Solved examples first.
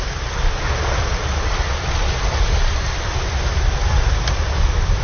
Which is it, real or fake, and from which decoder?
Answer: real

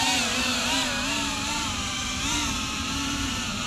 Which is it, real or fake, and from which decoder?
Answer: fake, vocoder, BigVGAN v2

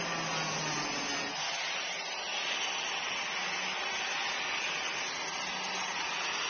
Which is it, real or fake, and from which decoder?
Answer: real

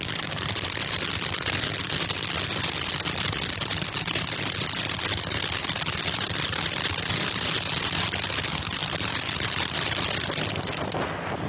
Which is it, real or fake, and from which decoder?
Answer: real